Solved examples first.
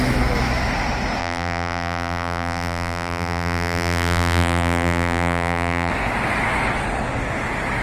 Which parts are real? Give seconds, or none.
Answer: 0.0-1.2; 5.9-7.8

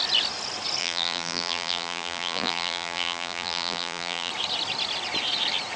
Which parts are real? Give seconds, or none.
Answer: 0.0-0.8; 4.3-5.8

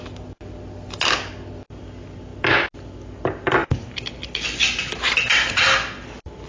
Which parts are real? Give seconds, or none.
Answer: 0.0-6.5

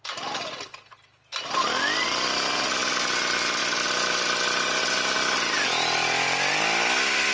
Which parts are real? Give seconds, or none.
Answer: 0.0-7.3